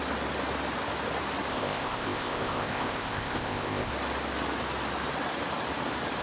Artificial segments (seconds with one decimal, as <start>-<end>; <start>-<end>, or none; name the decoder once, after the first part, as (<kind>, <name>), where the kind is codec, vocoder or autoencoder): 1.5-3.9 (codec, ZipCodec)